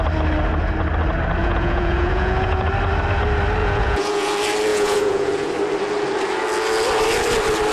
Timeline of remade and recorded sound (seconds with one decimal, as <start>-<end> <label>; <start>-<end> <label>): 0.0-1.4 recorded; 1.4-2.7 remade; 2.7-3.6 recorded; 3.6-4.3 remade; 4.3-4.7 recorded; 4.7-5.5 remade; 5.5-7.7 recorded